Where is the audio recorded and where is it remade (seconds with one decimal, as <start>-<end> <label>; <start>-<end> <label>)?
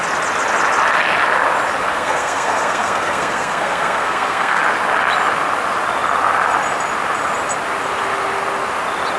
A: 0.0-1.8 recorded; 1.8-4.6 remade; 4.6-9.2 recorded